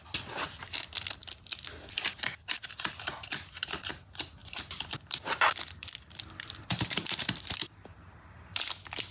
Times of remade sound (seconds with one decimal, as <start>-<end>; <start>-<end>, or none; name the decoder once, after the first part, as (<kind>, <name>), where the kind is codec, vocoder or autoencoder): 1.2-3.9 (vocoder, BigVGAN v2); 4.4-8.1